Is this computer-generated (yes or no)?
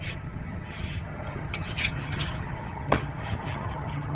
yes